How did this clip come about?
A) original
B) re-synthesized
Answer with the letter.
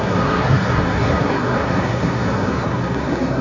B